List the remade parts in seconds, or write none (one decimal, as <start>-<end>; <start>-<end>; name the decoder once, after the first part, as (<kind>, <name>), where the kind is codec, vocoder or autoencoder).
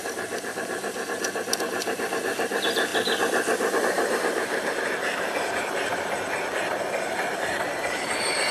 0.0-2.9 (vocoder, BigVGAN v2); 3.8-5.9; 7.3-8.5